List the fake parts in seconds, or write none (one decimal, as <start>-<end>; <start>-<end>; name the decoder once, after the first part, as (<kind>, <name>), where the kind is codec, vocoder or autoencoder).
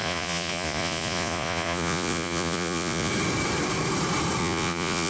0.0-3.1 (vocoder, Vocos); 4.4-5.1